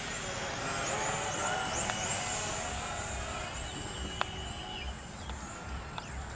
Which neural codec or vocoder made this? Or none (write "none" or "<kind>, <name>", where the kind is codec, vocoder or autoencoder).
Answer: none